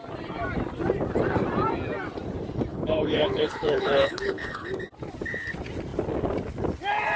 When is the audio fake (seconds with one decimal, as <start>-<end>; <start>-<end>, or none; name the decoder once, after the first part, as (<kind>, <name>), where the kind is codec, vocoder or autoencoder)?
2.7-4.7 (codec, HILCodec)